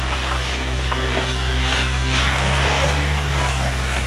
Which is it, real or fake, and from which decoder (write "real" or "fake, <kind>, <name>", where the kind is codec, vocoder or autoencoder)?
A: fake, codec, DAC